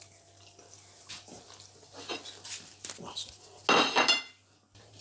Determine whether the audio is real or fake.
real